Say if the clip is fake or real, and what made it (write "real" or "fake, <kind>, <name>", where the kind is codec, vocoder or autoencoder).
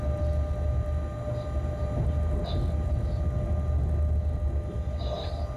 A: real